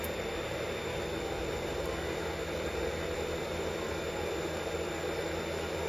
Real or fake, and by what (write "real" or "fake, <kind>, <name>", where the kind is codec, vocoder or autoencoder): fake, vocoder, BigVGAN v2